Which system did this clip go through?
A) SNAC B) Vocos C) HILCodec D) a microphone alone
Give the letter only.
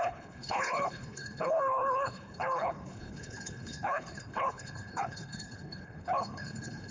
C